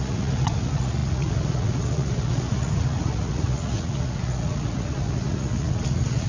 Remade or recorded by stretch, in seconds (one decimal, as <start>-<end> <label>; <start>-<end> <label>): 0.0-6.3 remade